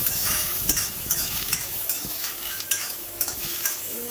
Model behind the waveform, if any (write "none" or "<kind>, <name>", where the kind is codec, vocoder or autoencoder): autoencoder, DAC-VAE